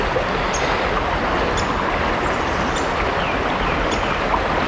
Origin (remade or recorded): recorded